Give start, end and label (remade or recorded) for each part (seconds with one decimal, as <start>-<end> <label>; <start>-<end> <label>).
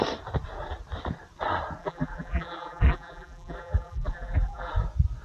0.0-1.8 recorded; 1.8-4.7 remade; 4.7-5.2 recorded